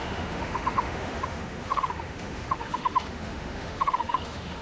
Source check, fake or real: fake